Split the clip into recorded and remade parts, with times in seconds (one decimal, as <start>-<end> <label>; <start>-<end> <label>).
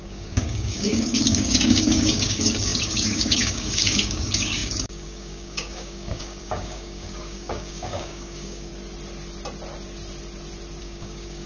0.0-8.7 remade; 8.7-10.8 recorded; 10.8-11.5 remade